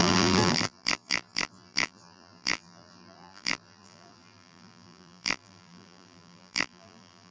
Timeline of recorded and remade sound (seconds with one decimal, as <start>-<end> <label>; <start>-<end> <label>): 0.0-7.3 remade